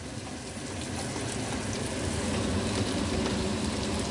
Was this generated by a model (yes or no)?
no